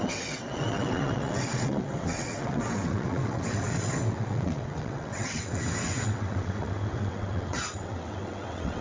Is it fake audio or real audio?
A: fake